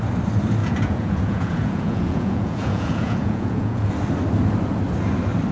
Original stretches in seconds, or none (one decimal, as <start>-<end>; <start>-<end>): 0.0-0.6; 3.9-5.5